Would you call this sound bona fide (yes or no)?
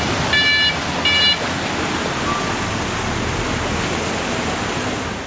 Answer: yes